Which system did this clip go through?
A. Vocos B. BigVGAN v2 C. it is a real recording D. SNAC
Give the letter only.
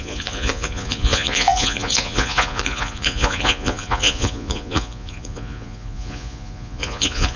A